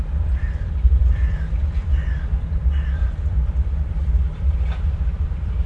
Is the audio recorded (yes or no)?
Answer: no